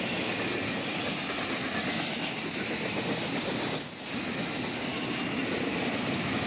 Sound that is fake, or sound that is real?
real